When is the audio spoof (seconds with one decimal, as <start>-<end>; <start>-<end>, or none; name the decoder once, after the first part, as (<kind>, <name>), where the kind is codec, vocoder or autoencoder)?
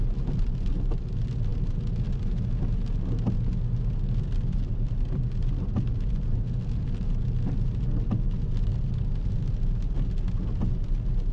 none